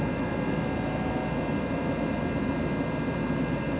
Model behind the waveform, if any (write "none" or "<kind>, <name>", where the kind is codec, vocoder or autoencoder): none